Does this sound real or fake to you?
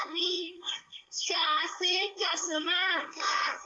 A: fake